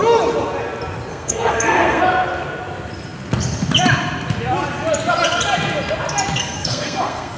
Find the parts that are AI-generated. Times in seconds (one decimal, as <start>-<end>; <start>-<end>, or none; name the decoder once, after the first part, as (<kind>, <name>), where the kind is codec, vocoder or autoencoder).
1.1-2.0 (codec, SNAC); 6.4-7.4